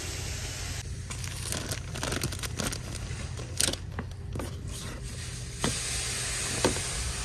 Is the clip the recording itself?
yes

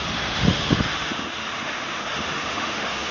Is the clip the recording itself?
no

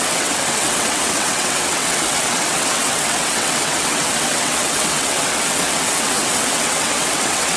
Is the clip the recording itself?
no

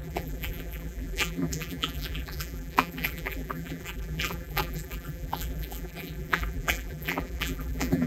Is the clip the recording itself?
no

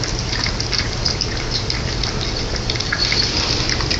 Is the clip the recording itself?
yes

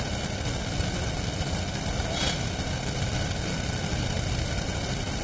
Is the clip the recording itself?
yes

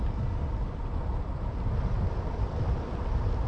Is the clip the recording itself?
yes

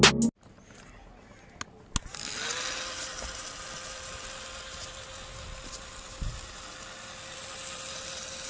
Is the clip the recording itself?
yes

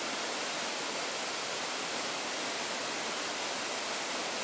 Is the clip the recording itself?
yes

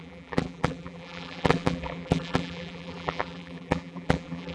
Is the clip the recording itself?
no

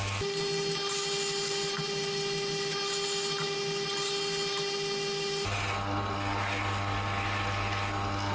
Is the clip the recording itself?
yes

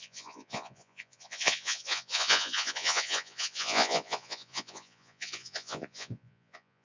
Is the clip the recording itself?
no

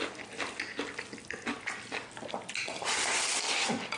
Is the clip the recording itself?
yes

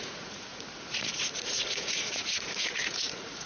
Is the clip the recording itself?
no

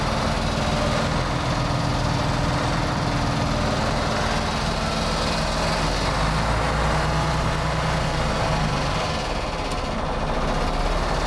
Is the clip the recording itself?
yes